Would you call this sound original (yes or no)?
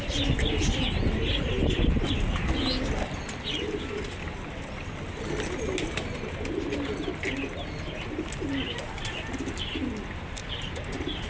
yes